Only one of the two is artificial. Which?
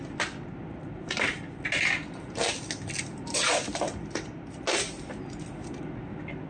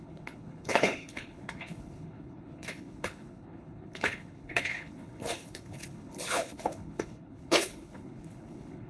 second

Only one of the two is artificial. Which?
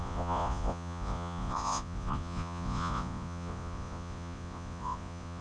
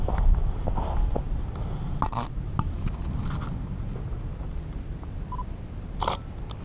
first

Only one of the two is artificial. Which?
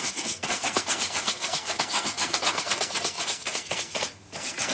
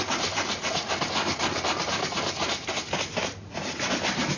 first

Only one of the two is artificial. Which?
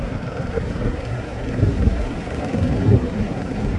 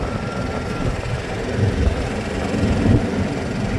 first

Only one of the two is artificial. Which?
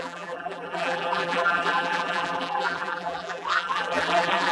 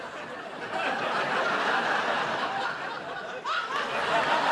first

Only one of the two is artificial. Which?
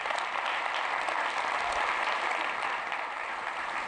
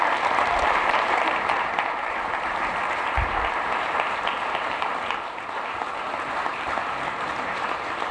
second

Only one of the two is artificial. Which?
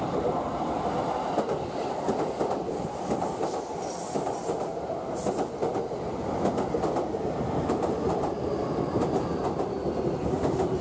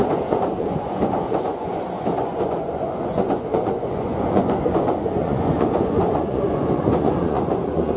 second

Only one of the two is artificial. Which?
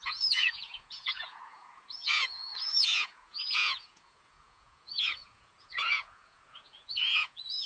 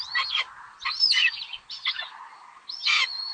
first